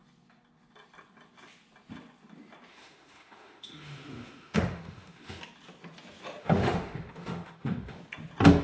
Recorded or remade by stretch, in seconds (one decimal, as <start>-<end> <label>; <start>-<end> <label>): 0.0-2.7 recorded; 2.7-5.4 remade; 5.4-6.4 recorded; 6.4-8.0 remade; 8.0-8.6 recorded